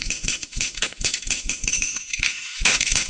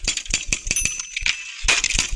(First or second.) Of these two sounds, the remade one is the first